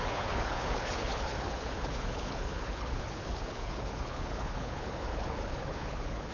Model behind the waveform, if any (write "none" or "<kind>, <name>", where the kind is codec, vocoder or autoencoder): codec, HILCodec